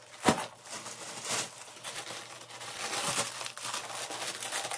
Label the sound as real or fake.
real